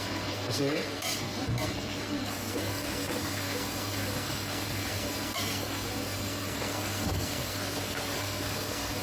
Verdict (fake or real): fake